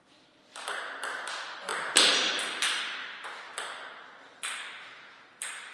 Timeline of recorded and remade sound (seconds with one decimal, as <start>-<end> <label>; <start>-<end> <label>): 0.0-5.7 recorded